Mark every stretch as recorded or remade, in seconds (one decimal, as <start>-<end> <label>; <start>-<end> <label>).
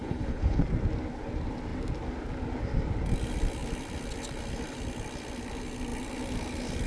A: 0.0-0.6 remade; 0.6-6.9 recorded